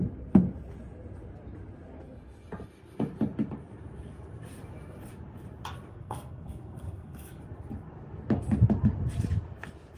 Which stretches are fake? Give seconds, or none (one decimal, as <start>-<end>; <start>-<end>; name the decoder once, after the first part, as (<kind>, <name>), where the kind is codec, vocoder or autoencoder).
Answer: 5.9-7.4 (codec, SNAC)